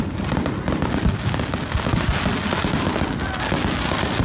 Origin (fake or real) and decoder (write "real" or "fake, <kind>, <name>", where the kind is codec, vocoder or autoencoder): real